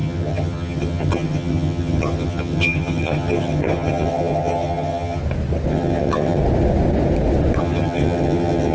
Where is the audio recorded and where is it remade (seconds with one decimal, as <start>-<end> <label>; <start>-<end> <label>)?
0.0-5.2 remade; 5.2-5.7 recorded; 5.7-6.4 remade; 6.4-7.6 recorded; 7.6-8.7 remade